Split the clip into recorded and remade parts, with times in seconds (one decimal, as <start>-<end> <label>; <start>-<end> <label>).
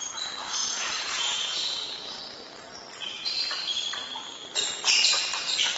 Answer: 0.0-0.6 recorded; 0.6-2.2 remade; 2.2-5.8 recorded